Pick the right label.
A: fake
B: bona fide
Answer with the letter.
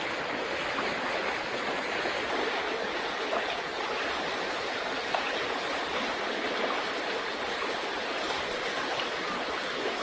B